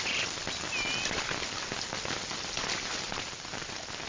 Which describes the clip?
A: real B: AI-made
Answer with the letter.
A